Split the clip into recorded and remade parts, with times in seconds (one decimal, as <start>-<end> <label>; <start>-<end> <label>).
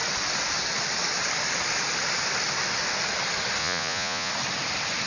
0.0-3.6 recorded; 3.6-4.3 remade; 4.3-5.1 recorded